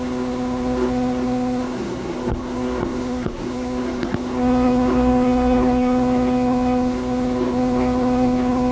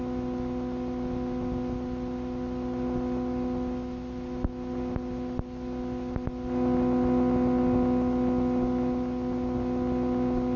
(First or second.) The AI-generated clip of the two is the first